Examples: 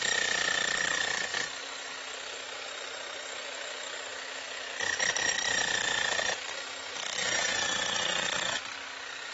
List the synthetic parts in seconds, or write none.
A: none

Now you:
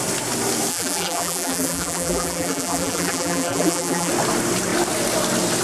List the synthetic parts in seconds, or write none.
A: 0.7-4.1 (vocoder, BigVGAN v2)

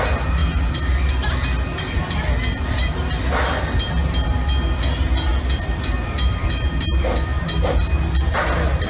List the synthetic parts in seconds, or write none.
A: 0.0-0.4 (vocoder, BigVGAN v2); 1.8-2.8; 5.3-7.3; 8.2-8.9

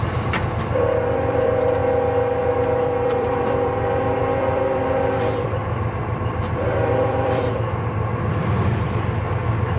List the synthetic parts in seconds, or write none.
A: 0.0-1.8 (vocoder, BigVGAN v2); 2.4-9.8

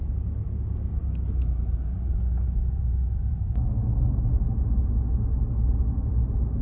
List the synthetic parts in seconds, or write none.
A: none

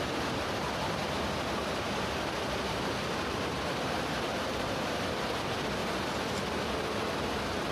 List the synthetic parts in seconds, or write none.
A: 1.0-5.2 (vocoder, BigVGAN v2); 5.8-6.7

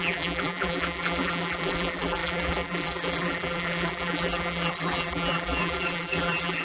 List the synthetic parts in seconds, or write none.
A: 0.0-6.6 (vocoder, BigVGAN v2)